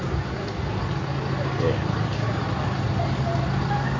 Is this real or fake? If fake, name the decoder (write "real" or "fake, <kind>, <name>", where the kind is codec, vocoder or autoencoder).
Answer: real